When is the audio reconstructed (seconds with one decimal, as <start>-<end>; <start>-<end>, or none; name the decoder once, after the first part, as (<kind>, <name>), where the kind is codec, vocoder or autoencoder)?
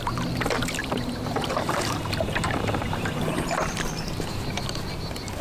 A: 0.8-4.0 (vocoder, BigVGAN v2)